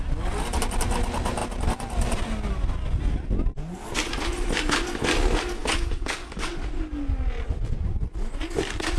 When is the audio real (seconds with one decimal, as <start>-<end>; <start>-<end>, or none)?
0.0-5.6; 6.5-9.0